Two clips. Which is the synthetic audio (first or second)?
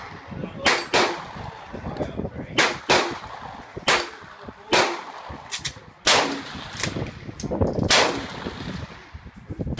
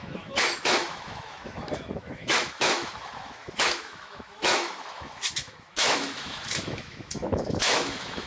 second